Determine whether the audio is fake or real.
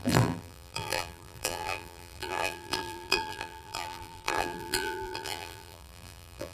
fake